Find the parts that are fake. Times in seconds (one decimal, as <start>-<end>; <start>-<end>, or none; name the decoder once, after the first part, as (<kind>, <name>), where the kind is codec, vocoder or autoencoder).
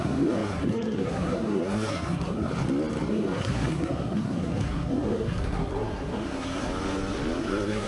0.0-2.5 (codec, SNAC); 3.1-6.7; 7.4-7.9